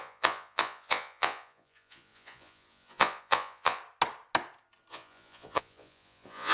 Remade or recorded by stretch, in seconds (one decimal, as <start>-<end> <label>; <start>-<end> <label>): 0.0-3.8 remade; 3.8-4.9 recorded; 4.9-6.5 remade